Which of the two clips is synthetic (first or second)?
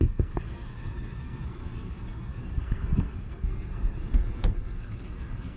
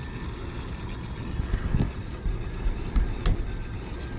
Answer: first